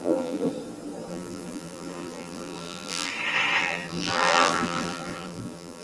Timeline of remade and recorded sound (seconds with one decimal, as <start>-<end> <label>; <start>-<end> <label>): 0.0-0.5 remade; 0.5-1.1 recorded; 1.1-3.1 remade; 3.1-3.6 recorded; 3.6-5.8 remade